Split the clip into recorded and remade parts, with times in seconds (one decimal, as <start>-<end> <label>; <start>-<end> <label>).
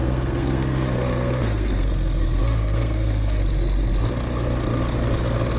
0.0-3.4 remade; 3.4-5.6 recorded